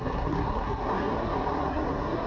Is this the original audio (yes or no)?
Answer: no